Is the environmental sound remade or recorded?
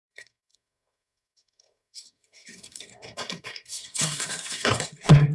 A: remade